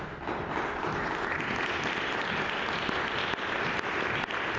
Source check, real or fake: real